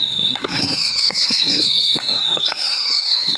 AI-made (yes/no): yes